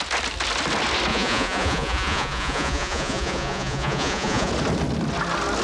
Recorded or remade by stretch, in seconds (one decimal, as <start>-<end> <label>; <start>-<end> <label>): 0.0-1.1 recorded; 1.1-4.5 remade; 4.5-5.6 recorded

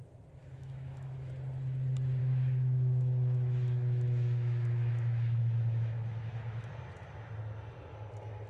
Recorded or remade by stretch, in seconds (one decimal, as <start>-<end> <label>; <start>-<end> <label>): 0.0-0.4 recorded; 0.4-1.3 remade; 1.3-2.2 recorded; 2.2-6.7 remade; 6.7-8.5 recorded

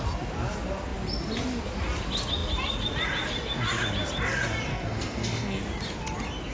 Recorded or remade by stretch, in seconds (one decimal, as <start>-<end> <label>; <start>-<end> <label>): 0.0-4.7 recorded; 4.7-5.6 remade; 5.6-6.5 recorded

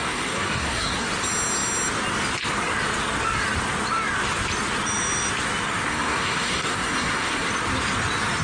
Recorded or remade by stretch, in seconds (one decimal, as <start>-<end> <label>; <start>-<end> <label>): 0.0-1.1 remade; 1.1-5.9 recorded; 5.9-7.5 remade; 7.5-8.4 recorded

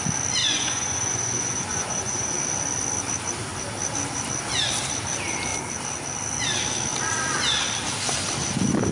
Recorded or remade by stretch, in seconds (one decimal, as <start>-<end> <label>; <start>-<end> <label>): 0.0-0.4 recorded; 0.4-2.4 remade; 2.4-8.9 recorded